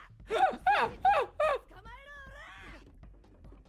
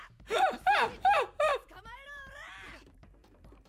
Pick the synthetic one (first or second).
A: second